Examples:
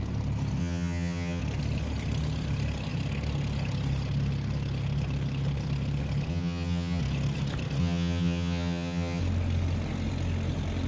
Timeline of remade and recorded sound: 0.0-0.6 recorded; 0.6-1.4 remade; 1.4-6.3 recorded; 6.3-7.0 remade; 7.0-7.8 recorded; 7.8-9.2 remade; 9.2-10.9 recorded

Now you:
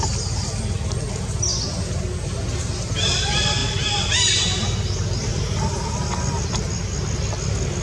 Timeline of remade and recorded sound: 0.0-1.5 recorded; 1.5-2.0 remade; 2.0-3.6 recorded; 3.6-5.3 remade; 5.3-7.8 recorded

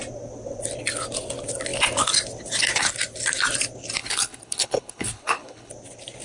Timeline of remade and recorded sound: 0.0-4.0 recorded; 4.0-5.7 remade; 5.7-6.2 recorded

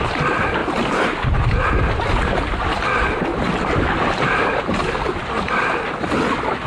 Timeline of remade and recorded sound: 0.0-6.7 recorded

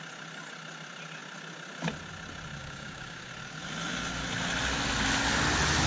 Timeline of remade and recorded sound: 0.0-2.6 recorded; 2.6-3.3 remade; 3.3-5.9 recorded

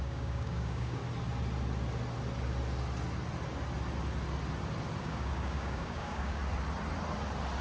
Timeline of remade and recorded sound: 0.0-1.0 remade; 1.0-5.0 recorded; 5.0-6.4 remade; 6.4-7.6 recorded